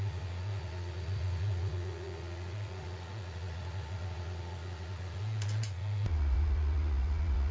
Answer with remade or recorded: remade